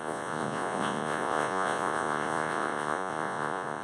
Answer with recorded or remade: remade